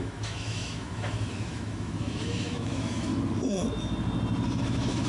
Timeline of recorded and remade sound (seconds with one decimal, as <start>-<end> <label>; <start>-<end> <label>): 0.0-3.1 remade; 3.1-4.6 recorded; 4.6-5.1 remade